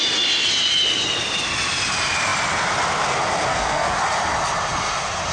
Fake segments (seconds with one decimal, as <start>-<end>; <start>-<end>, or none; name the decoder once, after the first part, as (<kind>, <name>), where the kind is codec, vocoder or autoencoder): 3.5-4.0 (codec, SNAC)